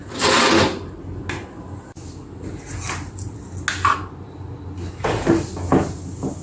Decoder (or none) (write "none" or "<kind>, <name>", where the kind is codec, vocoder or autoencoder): none